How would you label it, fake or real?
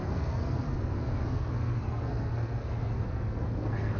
fake